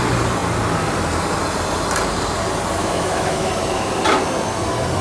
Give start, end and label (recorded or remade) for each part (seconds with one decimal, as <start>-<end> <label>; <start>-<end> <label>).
0.0-2.8 recorded; 2.8-3.5 remade; 3.5-5.0 recorded